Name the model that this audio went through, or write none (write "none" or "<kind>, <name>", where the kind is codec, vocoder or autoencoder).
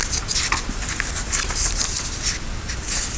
none